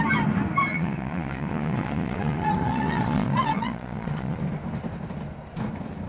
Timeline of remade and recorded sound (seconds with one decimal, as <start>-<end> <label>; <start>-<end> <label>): 0.0-0.7 recorded; 0.7-4.4 remade; 4.4-6.1 recorded